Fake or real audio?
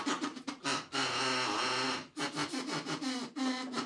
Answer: real